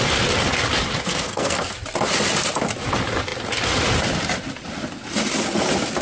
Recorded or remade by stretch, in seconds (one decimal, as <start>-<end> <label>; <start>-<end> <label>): 0.0-1.1 recorded; 1.1-1.7 remade; 1.7-6.0 recorded